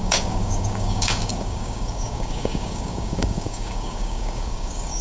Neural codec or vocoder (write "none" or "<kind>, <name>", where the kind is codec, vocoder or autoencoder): codec, DAC